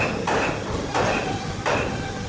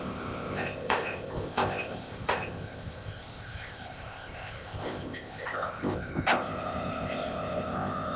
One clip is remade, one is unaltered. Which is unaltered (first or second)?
first